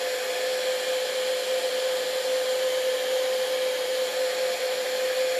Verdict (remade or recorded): recorded